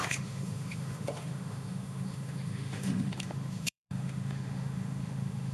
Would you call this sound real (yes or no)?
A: no